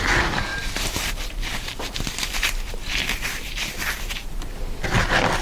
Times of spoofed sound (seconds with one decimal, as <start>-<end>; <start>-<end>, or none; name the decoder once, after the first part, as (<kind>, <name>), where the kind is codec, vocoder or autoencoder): 0.5-3.7 (vocoder, BigVGAN v2)